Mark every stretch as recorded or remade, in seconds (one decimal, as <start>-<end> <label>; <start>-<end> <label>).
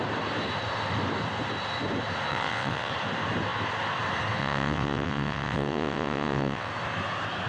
0.0-2.3 recorded; 2.3-2.9 remade; 2.9-4.4 recorded; 4.4-6.7 remade; 6.7-7.5 recorded